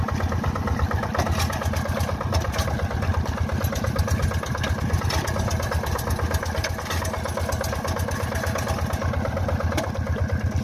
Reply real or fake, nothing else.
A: real